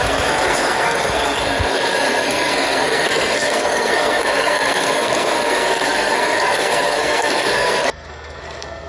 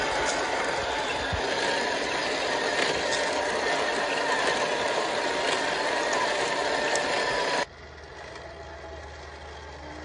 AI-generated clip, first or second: first